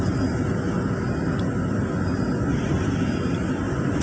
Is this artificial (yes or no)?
no